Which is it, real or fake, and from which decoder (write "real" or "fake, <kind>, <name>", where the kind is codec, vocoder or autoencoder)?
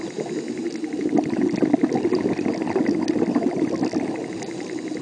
real